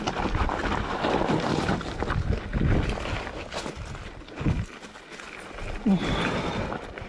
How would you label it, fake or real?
real